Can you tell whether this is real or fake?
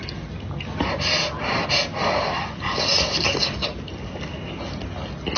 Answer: real